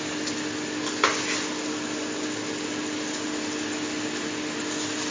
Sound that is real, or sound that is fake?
real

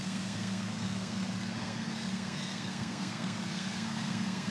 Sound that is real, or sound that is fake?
fake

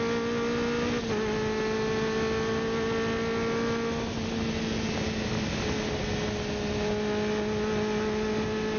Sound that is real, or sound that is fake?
real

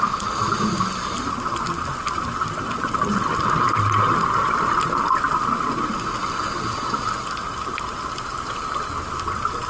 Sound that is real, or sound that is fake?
real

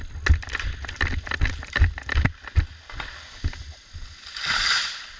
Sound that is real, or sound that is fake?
real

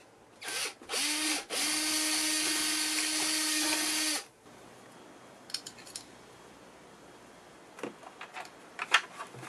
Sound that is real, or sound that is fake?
real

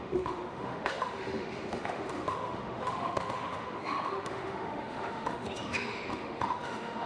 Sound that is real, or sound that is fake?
fake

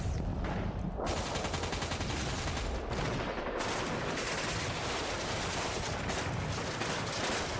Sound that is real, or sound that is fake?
real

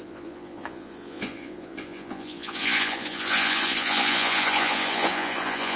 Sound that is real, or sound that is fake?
fake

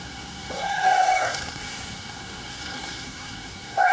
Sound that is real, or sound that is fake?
fake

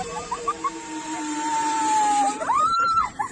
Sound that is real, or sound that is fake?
fake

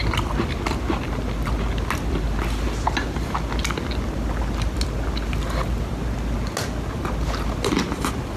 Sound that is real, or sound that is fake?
real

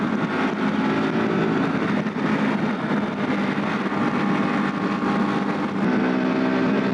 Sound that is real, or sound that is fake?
real